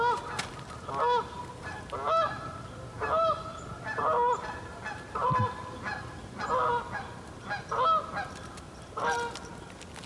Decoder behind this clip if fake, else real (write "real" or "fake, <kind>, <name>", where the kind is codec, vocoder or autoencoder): real